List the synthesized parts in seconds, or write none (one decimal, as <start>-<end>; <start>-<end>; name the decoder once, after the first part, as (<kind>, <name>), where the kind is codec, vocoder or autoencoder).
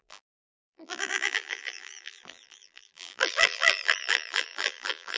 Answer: 0.0-5.2 (vocoder, BigVGAN v2)